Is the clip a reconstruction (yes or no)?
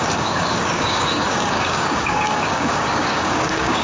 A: yes